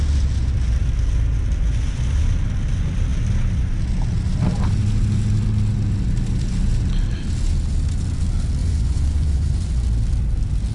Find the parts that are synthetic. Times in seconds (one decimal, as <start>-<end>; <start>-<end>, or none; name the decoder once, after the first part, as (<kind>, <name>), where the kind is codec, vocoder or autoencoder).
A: 8.6-9.6 (vocoder, Vocos)

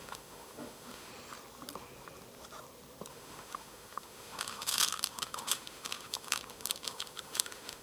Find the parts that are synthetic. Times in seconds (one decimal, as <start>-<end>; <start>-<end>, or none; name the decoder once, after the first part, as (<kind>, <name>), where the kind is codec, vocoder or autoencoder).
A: 0.0-1.1 (autoencoder, DAC-VAE); 3.1-7.8

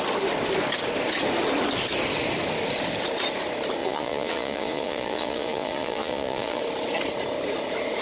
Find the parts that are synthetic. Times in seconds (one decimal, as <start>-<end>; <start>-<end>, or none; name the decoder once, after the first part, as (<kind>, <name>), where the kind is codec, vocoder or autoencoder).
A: 3.8-6.6 (vocoder, Vocos)

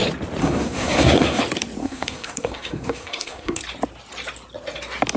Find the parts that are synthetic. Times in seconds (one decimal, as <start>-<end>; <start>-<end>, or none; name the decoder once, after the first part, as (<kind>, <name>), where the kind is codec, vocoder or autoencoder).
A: 0.4-1.4 (codec, SNAC); 1.8-3.6

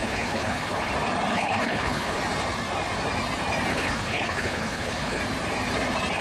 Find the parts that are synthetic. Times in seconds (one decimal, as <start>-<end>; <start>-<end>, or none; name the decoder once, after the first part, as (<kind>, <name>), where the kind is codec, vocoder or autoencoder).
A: 0.0-0.9 (codec, HILCodec); 1.3-2.2; 3.7-5.2

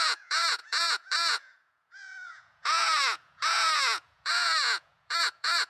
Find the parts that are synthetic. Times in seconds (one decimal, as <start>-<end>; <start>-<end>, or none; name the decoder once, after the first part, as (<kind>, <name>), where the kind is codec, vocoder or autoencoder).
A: 0.0-5.7 (vocoder, Vocos)

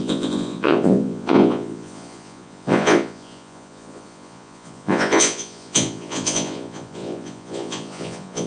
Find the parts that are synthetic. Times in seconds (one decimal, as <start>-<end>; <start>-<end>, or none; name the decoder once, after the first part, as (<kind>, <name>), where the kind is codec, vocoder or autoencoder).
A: 0.0-8.5 (vocoder, Vocos)